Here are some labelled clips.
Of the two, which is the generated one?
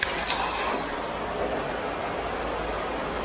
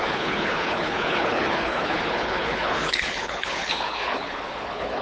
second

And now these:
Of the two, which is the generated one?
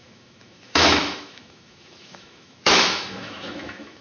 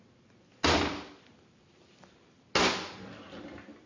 first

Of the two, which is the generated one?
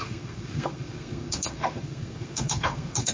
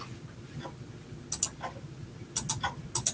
first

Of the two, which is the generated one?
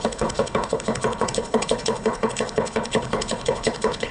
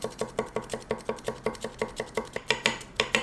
first